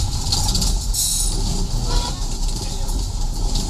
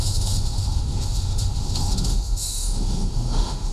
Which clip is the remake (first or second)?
second